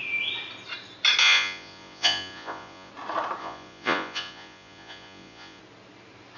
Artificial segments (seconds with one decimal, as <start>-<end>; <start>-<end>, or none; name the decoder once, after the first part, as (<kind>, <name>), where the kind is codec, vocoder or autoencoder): 1.2-2.9 (vocoder, Vocos); 3.4-5.6